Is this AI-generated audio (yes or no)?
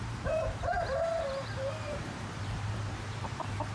yes